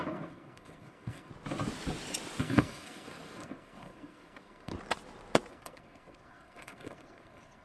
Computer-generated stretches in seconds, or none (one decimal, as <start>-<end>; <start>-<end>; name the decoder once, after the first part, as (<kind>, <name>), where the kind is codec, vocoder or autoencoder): 0.0-1.3 (codec, SNAC); 2.4-4.7; 5.5-7.6